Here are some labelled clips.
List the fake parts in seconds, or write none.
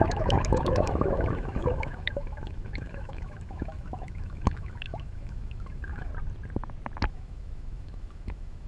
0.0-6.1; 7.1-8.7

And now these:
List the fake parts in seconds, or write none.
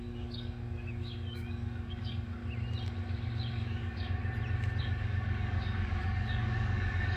0.0-2.4; 3.5-4.2; 4.8-7.2